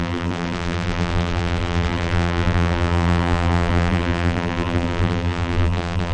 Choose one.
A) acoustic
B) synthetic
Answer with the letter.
B